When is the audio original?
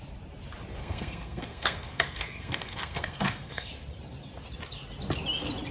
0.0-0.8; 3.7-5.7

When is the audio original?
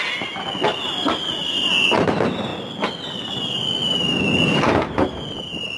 0.0-5.8